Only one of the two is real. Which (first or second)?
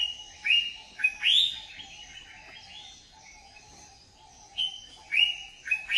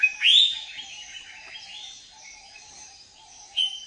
first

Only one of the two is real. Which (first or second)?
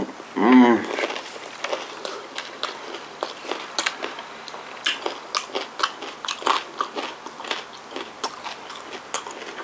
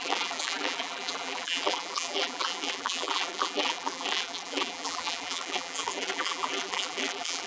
first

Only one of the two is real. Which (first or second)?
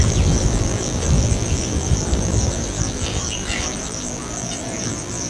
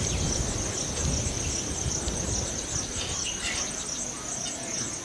second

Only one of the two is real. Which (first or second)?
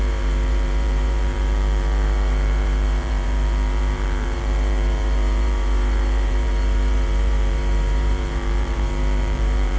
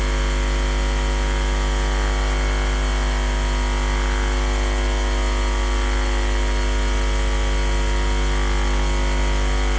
second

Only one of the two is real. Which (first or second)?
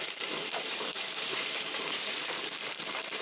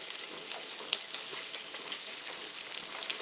second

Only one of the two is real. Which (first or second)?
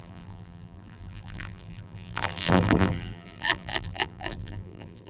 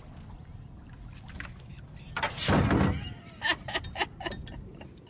second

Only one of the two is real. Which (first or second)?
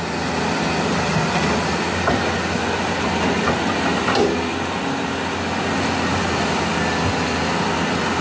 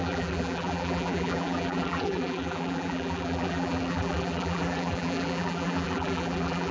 first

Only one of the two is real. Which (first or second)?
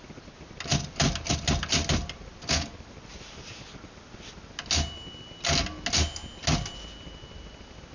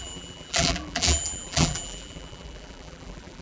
first